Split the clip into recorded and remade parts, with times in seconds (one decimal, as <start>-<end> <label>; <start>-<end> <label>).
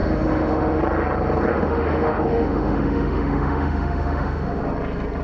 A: 0.0-0.8 remade; 0.8-1.5 recorded; 1.5-4.6 remade; 4.6-5.2 recorded